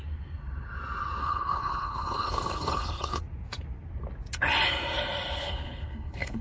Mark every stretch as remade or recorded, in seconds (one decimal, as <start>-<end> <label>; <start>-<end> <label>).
0.0-1.2 recorded; 1.2-3.2 remade; 3.2-5.4 recorded; 5.4-6.4 remade